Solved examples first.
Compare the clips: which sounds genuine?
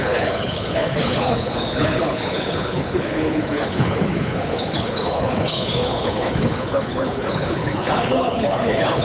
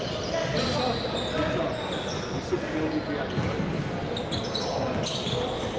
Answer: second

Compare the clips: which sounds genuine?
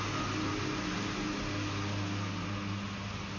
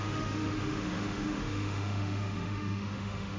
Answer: first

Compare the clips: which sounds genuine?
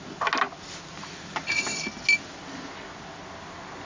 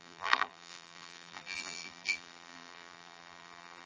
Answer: first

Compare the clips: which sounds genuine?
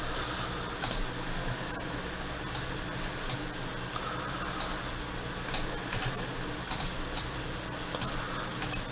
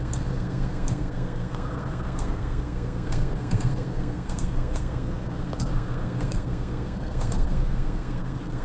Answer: first